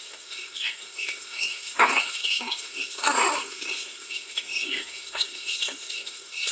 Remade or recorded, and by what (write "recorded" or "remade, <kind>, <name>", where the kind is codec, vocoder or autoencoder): remade, codec, SNAC